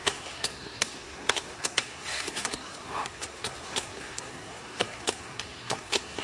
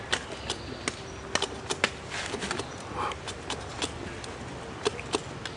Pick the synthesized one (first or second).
first